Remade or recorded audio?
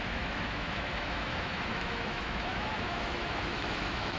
remade